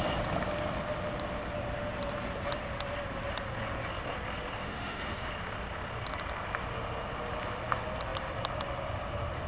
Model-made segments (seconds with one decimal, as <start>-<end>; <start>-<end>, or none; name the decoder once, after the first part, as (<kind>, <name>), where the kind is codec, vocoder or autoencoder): 4.6-5.3 (autoencoder, DAC-VAE)